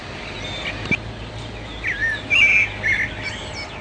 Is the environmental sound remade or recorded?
recorded